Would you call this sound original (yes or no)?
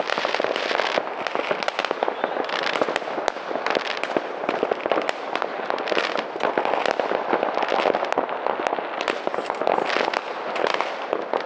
yes